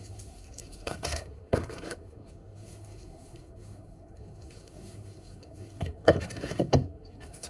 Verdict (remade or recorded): remade